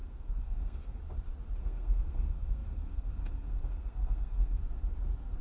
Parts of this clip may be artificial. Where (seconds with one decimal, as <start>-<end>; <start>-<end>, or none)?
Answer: 0.0-1.0; 1.6-4.6